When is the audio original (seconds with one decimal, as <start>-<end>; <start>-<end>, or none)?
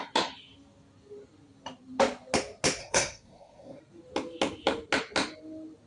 0.0-2.8; 3.8-5.9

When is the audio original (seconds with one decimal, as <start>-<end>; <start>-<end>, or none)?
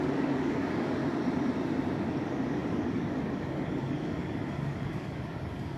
1.0-2.0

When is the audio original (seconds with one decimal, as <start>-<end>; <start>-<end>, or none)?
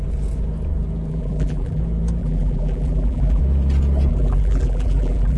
0.0-1.1; 1.8-2.2; 3.4-4.1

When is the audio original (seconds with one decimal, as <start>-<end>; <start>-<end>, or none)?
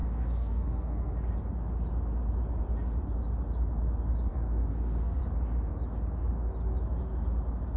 1.1-4.3; 5.2-7.8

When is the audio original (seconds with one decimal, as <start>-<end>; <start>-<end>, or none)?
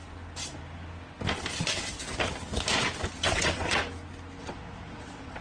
0.0-3.2; 3.8-4.4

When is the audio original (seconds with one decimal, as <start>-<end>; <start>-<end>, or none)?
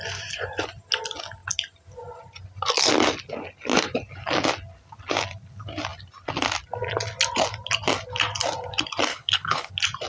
0.0-9.1; 9.7-10.1